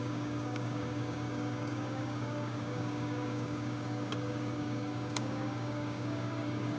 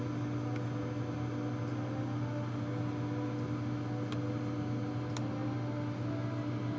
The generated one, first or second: first